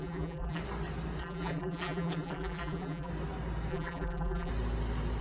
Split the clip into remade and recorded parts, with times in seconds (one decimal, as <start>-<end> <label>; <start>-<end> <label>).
0.0-0.6 remade; 0.6-1.2 recorded; 1.2-3.1 remade; 3.1-3.7 recorded; 3.7-4.5 remade; 4.5-5.2 recorded